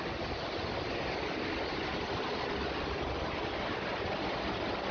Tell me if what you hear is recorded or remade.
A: recorded